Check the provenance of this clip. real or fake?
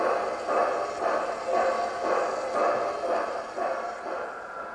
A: real